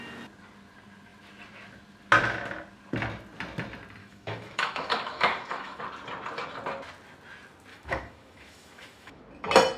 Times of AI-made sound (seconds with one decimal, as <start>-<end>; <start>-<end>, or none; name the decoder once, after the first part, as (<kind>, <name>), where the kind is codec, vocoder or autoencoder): 4.0-5.8 (autoencoder, DAC-VAE); 7.7-9.2